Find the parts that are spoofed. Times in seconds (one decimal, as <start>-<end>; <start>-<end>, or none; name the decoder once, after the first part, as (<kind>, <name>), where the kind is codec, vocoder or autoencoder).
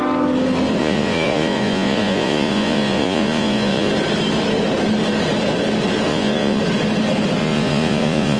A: 0.8-3.9 (vocoder, Vocos); 6.1-6.6; 7.4-8.4